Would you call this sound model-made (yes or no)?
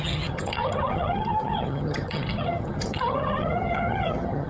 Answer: yes